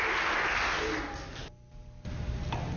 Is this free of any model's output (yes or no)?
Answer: yes